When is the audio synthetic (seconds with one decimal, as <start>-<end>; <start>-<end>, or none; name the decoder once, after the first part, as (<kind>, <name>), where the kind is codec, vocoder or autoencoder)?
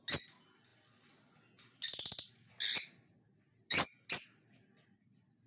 none